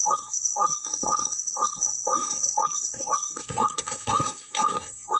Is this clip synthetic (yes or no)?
yes